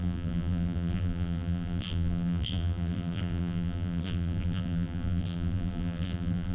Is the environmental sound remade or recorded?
remade